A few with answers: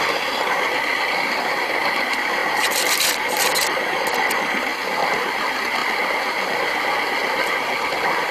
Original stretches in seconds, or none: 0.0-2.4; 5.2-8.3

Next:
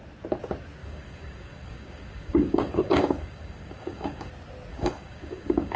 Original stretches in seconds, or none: 0.0-0.8; 4.3-4.7

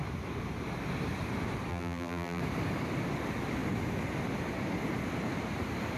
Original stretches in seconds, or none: 0.0-1.7; 2.4-6.0

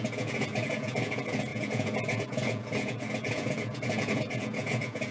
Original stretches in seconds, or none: none